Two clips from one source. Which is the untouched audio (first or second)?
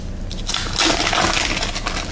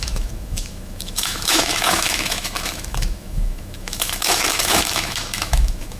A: first